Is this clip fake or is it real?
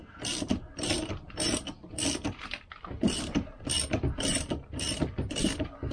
fake